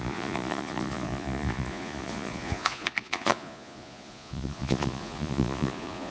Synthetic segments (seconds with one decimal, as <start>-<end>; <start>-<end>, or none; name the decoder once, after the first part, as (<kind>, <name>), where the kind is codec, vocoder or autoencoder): 0.0-6.1 (vocoder, Vocos)